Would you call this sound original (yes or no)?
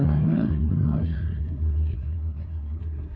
no